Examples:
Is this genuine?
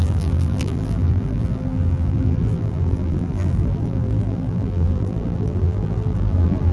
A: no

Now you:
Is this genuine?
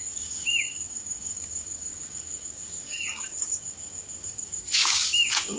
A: no